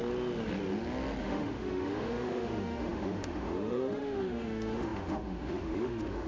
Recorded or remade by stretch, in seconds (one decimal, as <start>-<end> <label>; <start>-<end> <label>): 0.0-1.2 recorded; 1.2-6.3 remade